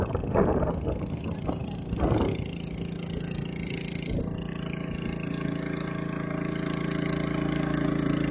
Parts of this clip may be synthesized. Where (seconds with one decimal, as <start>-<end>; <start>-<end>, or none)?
none